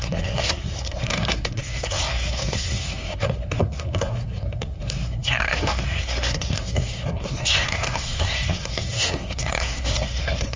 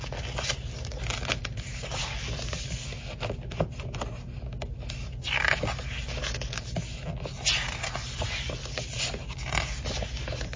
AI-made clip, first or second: first